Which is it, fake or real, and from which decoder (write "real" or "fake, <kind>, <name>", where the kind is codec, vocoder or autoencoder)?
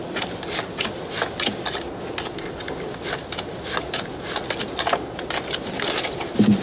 real